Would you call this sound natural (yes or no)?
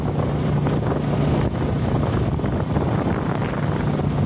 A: yes